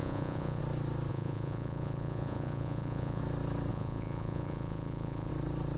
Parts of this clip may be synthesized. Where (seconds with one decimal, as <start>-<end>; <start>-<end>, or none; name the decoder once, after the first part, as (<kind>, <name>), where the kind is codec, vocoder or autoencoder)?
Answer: 0.0-0.6 (vocoder, Vocos); 1.1-3.2; 3.7-5.3